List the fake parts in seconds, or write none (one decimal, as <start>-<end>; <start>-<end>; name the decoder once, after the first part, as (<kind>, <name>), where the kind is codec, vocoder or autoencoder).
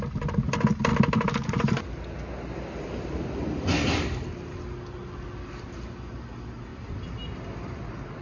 none